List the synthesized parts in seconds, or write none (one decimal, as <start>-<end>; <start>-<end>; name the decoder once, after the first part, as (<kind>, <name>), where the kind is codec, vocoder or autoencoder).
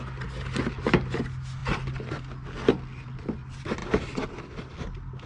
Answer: none